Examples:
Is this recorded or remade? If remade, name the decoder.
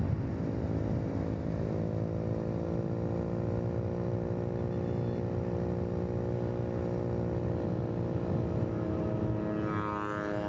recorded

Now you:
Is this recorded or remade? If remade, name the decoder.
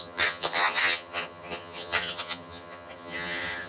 remade, vocoder, HiFi-GAN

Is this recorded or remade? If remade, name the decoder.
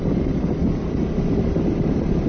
recorded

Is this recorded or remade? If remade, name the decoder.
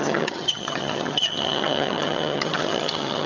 remade, vocoder, HiFi-GAN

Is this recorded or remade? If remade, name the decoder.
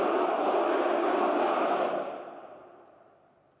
recorded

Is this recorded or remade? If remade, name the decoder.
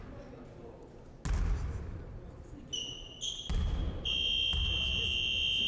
recorded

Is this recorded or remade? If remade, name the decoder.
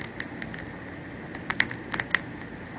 recorded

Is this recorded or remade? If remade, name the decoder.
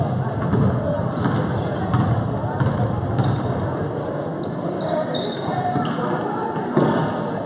recorded